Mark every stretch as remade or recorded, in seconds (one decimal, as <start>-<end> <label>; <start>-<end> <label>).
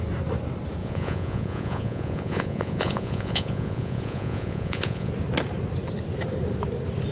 0.0-0.8 recorded; 0.8-5.1 remade; 5.1-7.1 recorded